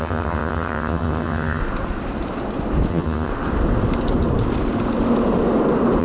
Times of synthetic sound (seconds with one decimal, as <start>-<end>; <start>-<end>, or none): 0.0-1.6; 2.9-3.3

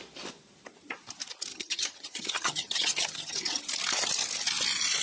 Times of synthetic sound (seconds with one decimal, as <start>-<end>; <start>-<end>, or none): 1.5-3.6

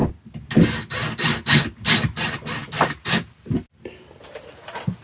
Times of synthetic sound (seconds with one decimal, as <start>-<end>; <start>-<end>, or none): none

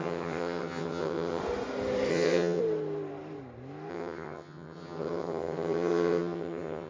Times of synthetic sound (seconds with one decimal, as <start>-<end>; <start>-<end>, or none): 0.0-1.4; 2.1-2.6; 3.9-6.9

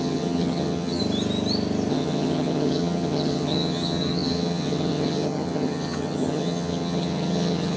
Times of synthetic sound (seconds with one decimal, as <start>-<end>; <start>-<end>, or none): 0.0-1.0; 1.9-7.8